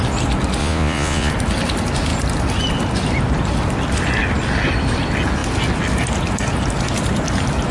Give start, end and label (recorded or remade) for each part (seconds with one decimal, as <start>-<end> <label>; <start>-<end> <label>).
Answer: 0.0-0.6 recorded; 0.6-1.3 remade; 1.3-7.7 recorded